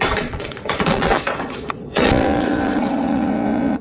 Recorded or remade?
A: remade